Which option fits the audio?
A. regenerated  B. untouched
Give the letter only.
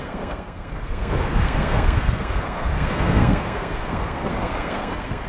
A